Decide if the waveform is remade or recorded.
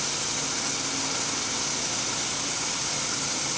recorded